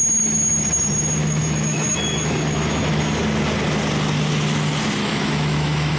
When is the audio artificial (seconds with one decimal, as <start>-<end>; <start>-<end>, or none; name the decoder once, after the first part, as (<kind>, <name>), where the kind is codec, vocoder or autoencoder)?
1.2-3.0 (autoencoder, DAC-VAE); 5.0-6.0